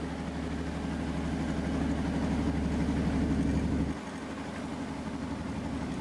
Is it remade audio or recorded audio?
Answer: recorded